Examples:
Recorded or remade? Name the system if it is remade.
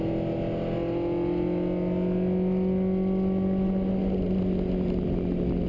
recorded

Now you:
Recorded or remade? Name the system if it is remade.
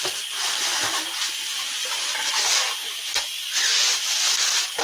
recorded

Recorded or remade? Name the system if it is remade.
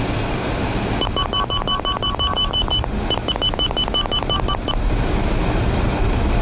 recorded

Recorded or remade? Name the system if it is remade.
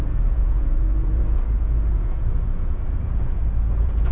remade, vocoder, Vocos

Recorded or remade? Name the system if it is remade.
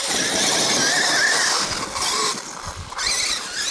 recorded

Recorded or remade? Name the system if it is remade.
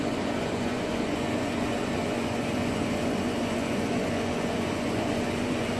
remade, vocoder, Vocos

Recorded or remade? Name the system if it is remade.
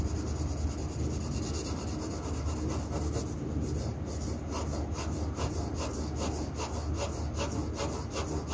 recorded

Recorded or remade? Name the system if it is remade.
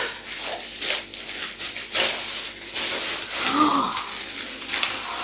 recorded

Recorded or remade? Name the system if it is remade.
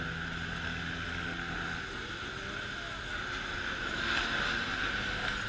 recorded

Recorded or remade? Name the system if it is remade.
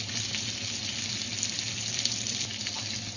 recorded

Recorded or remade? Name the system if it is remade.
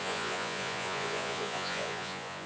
remade, vocoder, Vocos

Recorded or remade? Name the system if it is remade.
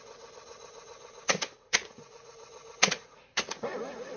remade, vocoder, Vocos